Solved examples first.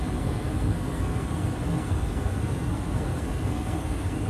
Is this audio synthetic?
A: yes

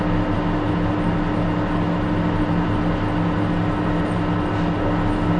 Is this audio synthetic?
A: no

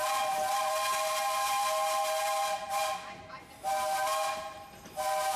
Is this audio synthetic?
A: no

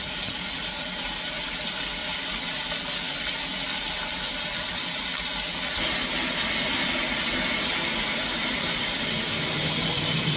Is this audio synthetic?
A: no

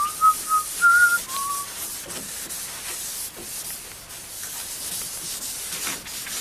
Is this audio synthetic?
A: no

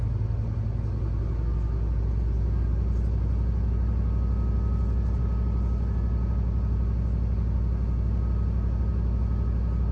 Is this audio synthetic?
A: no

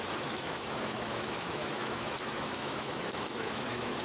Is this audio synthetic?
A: yes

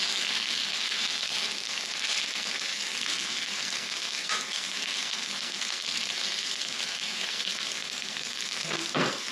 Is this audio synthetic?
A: yes